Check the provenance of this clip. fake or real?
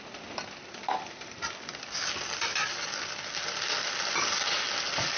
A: real